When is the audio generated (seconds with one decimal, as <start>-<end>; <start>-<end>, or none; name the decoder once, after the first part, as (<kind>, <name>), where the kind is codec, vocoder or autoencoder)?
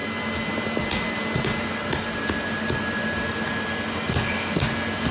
none